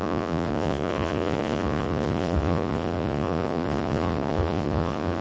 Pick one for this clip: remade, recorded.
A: remade